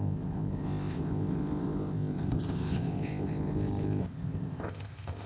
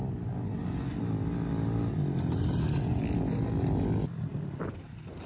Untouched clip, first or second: second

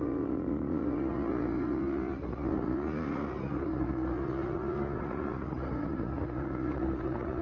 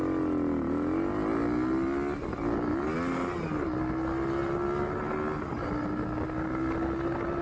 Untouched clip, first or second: second